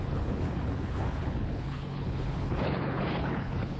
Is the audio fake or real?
fake